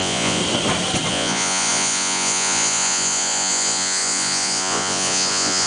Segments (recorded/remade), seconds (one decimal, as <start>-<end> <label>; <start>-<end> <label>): 0.0-0.4 remade; 0.4-1.1 recorded; 1.1-5.7 remade